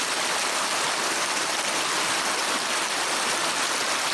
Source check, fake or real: real